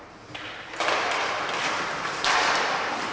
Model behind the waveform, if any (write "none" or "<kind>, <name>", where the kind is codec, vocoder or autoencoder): vocoder, BigVGAN v2